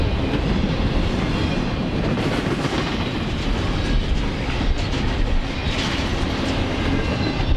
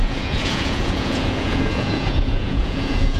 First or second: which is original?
first